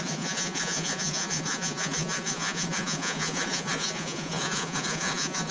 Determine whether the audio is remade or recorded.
remade